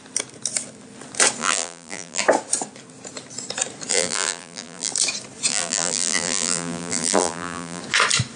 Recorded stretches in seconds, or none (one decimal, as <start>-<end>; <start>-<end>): 0.0-1.4; 2.2-3.9; 4.9-5.5; 7.8-8.4